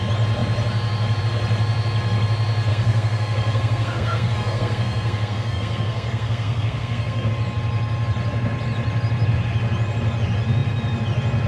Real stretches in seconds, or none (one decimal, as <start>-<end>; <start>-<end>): 0.0-2.7; 7.3-11.5